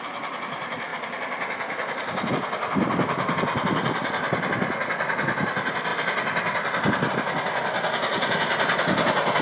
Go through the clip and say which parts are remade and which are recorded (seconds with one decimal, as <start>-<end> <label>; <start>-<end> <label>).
0.0-9.4 recorded